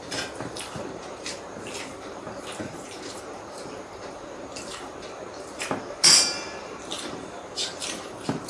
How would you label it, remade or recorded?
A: remade